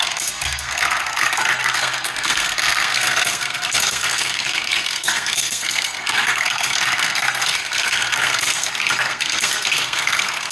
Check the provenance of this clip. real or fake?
fake